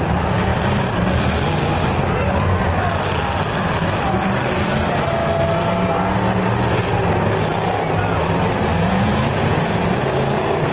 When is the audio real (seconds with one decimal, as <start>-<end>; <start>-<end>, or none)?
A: 0.0-8.7; 9.8-10.7